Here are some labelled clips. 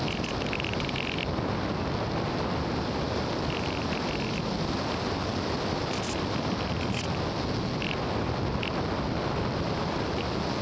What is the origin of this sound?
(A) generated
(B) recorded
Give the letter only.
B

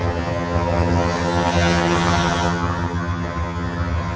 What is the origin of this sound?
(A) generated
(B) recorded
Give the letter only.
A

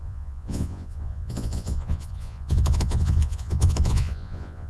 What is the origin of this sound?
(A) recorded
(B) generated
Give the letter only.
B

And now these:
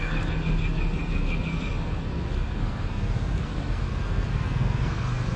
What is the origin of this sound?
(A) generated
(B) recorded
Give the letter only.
A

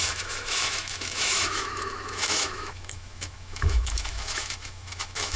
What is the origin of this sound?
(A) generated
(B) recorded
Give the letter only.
A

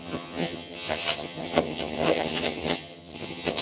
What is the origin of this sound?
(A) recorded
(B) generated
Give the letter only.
B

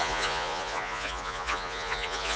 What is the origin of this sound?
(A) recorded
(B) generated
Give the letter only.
B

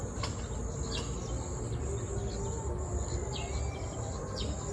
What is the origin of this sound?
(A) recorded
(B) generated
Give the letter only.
A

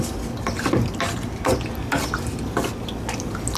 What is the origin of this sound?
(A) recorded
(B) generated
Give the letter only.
A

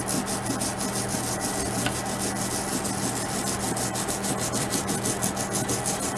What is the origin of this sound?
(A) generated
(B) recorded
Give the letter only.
B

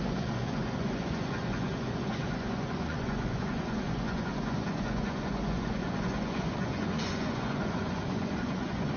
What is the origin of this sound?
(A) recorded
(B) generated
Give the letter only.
B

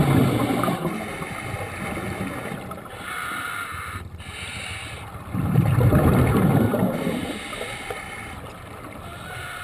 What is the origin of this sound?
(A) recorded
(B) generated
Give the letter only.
A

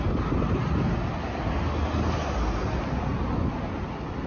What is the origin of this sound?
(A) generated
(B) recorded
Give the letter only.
B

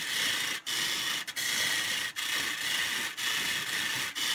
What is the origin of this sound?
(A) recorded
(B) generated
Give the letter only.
A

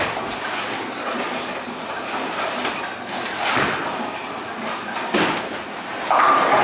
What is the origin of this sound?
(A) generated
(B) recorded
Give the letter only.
B